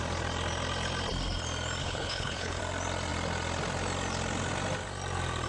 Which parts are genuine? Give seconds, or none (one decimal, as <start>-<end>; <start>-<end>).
0.0-1.8; 2.6-5.5